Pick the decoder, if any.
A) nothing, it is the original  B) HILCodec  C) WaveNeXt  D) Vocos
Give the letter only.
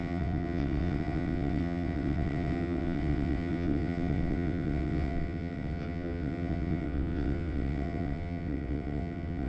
C